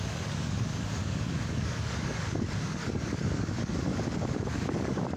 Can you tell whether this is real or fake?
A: fake